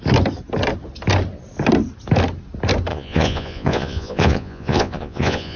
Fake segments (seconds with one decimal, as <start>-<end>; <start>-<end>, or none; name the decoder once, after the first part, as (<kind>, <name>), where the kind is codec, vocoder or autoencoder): 2.9-5.6 (vocoder, Vocos)